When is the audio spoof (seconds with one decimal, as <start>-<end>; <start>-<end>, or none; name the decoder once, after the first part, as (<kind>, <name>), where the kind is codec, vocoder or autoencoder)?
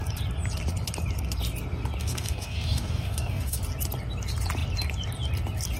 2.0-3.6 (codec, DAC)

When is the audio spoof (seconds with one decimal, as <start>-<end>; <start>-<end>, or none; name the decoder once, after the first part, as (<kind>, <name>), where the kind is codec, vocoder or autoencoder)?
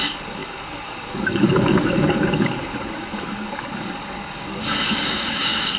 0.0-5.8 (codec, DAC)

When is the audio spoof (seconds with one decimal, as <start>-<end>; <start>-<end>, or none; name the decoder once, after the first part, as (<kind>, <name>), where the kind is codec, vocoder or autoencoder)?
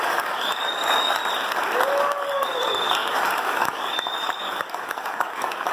0.0-1.2 (codec, DAC); 2.0-5.7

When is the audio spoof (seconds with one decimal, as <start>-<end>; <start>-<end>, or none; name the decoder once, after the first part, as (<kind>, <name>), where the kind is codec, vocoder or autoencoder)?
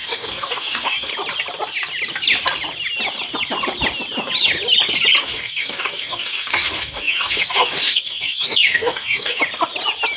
0.0-1.1 (codec, DAC); 5.2-9.4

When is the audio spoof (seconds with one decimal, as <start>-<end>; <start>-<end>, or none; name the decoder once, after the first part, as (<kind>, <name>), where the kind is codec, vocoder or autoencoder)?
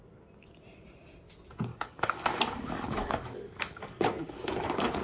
1.7-5.0 (codec, DAC)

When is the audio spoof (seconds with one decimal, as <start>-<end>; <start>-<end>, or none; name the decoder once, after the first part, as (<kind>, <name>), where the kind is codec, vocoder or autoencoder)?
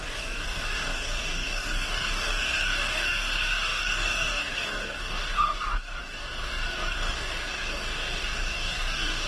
0.0-9.3 (codec, DAC)